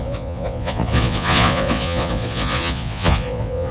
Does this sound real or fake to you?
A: fake